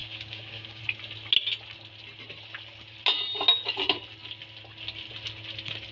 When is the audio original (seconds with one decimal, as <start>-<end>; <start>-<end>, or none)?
0.8-5.9